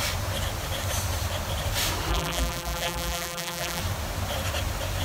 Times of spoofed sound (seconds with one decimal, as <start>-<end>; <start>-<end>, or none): 2.1-3.8

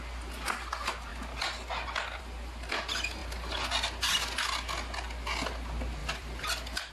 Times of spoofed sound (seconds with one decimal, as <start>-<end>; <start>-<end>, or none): 6.0-6.9

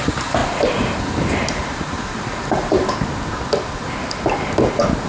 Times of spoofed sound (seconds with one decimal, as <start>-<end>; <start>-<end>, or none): 0.0-0.4; 1.5-2.8

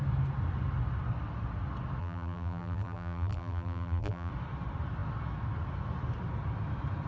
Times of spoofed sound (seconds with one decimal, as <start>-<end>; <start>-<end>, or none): 2.0-4.3

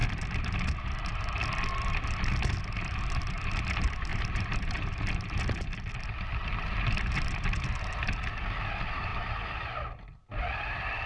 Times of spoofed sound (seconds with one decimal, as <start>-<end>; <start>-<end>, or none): 4.1-4.7

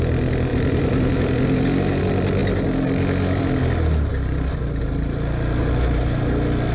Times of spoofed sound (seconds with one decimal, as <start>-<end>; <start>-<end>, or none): 0.5-2.0

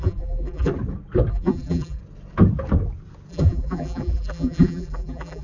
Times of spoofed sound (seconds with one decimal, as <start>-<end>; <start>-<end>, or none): 0.0-0.7; 1.3-2.0; 3.3-5.4